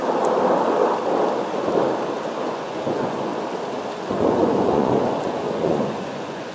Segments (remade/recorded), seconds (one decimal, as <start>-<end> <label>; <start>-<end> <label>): 0.0-2.4 recorded; 2.4-3.3 remade; 3.3-3.9 recorded; 3.9-6.5 remade